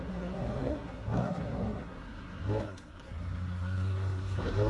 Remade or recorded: remade